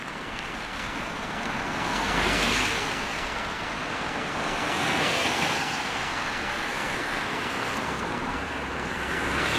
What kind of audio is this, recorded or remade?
remade